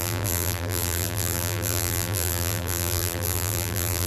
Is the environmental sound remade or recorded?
remade